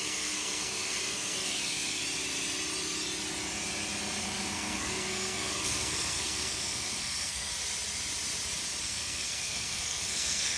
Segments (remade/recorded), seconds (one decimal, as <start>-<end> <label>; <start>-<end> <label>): 0.0-2.0 remade; 2.0-4.2 recorded; 4.2-7.5 remade; 7.5-8.8 recorded; 8.8-10.6 remade